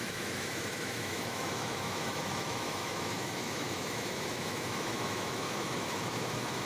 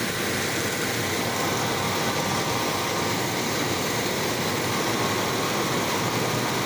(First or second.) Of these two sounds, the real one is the second